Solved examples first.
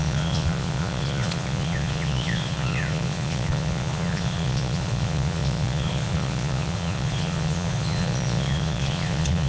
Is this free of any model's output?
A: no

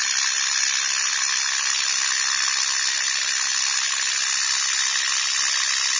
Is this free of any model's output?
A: yes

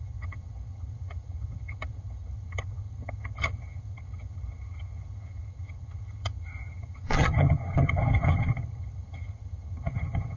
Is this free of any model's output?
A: no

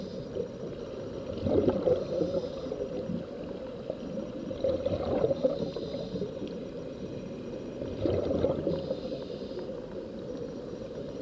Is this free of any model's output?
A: yes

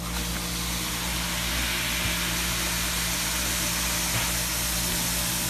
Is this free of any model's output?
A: yes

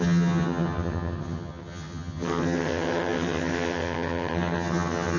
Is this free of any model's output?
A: no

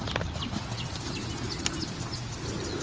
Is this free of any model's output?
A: yes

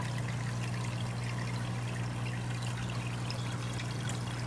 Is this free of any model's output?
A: yes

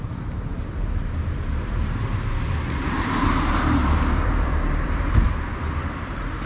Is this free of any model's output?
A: no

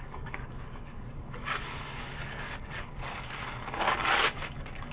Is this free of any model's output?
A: no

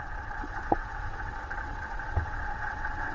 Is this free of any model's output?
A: no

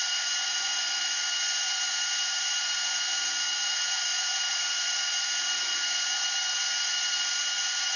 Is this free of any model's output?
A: no